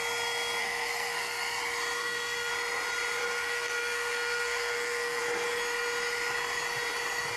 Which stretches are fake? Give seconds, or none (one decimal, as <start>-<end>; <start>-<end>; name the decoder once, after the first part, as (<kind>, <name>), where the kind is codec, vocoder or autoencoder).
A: 0.6-1.6 (codec, SNAC); 2.0-2.5; 3.2-5.2